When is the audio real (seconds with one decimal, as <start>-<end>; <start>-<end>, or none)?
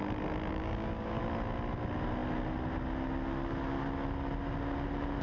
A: 0.0-0.5; 1.2-5.2